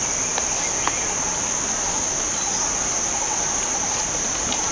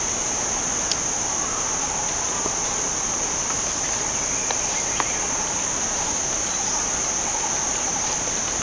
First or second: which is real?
first